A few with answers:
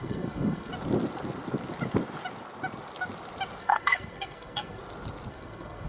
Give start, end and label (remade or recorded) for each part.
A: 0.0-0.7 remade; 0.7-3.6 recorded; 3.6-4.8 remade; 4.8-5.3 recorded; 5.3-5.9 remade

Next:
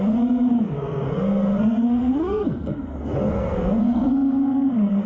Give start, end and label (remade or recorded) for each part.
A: 0.0-5.1 remade

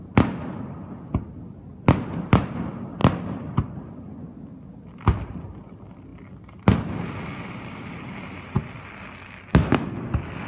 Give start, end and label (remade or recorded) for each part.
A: 0.0-10.5 recorded

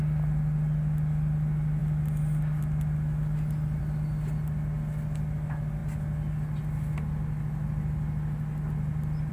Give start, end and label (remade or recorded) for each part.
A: 0.0-9.3 recorded

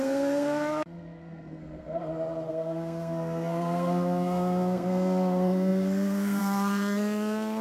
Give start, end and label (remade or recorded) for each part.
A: 0.0-2.0 remade; 2.0-2.5 recorded; 2.5-7.6 remade

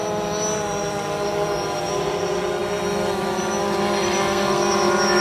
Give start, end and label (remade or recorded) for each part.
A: 0.0-4.2 recorded; 4.2-4.7 remade; 4.7-5.2 recorded

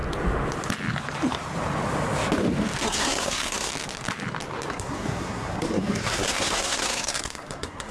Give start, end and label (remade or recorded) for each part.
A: 0.0-2.8 recorded; 2.8-3.7 remade; 3.7-4.7 recorded; 4.7-7.9 remade